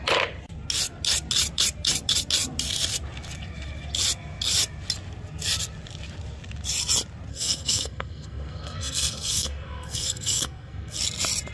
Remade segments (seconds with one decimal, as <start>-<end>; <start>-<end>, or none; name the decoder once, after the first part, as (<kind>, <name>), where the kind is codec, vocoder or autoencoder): 7.3-11.0 (codec, SNAC)